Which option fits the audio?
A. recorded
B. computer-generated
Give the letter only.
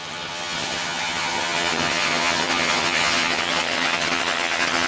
B